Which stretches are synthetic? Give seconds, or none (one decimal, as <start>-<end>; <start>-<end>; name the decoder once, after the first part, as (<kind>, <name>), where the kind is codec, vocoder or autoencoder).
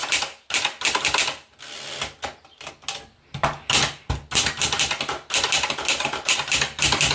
none